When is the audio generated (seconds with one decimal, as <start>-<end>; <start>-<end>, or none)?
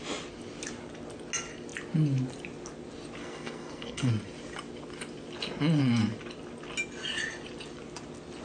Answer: 3.2-4.1